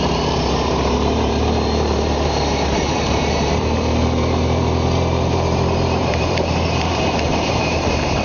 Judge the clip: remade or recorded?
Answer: remade